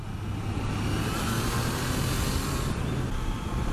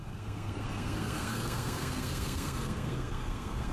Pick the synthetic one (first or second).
second